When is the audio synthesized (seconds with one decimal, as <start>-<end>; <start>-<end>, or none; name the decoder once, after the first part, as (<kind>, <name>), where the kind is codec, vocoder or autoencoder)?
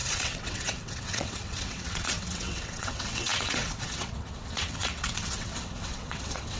0.0-6.6 (vocoder, WaveNeXt)